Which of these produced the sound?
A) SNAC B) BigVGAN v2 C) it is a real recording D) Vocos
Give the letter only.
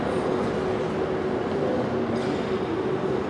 C